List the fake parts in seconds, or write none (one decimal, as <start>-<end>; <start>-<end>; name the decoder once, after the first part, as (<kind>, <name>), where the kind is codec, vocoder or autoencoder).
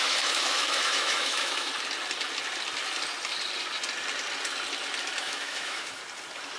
0.0-1.7 (autoencoder, DAC-VAE); 5.2-6.0